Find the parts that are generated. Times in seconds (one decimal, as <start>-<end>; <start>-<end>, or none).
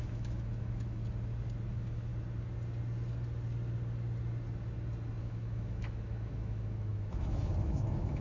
0.0-1.0; 1.7-2.1; 5.2-8.2